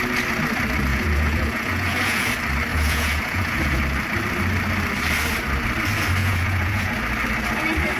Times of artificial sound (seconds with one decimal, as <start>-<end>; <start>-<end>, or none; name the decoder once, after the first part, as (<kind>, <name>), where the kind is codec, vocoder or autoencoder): 0.9-2.3 (vocoder, Vocos); 2.7-3.8; 6.2-6.9